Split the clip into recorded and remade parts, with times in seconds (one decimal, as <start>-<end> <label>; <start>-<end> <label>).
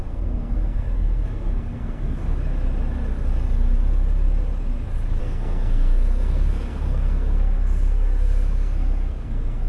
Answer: 0.0-2.2 remade; 2.2-5.2 recorded; 5.2-9.7 remade